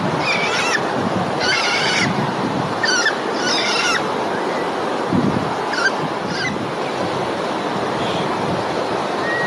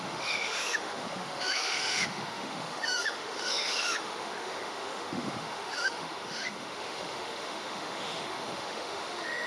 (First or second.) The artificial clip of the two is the second